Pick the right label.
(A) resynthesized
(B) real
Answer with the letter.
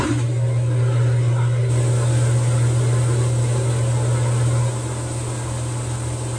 B